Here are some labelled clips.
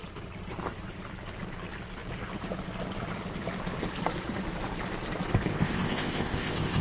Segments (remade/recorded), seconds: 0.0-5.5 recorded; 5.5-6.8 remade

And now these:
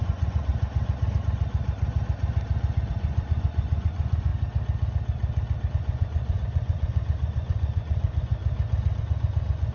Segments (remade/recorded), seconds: 0.0-0.5 remade; 0.5-2.9 recorded; 2.9-4.3 remade; 4.3-5.7 recorded; 5.7-8.3 remade; 8.3-9.0 recorded; 9.0-9.7 remade

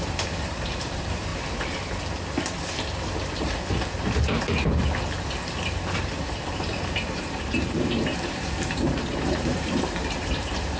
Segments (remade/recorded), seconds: 0.0-1.3 remade; 1.3-6.5 recorded; 6.5-10.8 remade

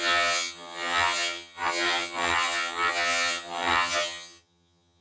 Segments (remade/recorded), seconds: 0.0-5.0 remade

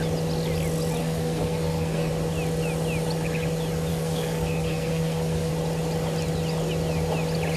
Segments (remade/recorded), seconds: 0.0-1.0 recorded; 1.0-2.1 remade; 2.1-3.9 recorded; 3.9-5.5 remade; 5.5-7.6 recorded